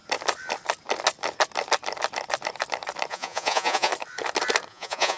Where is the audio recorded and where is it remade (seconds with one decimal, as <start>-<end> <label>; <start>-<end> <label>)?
0.0-3.1 recorded; 3.1-3.9 remade; 3.9-4.7 recorded; 4.7-5.2 remade